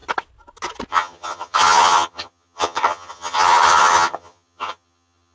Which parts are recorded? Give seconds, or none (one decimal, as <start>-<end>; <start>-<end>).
0.0-0.9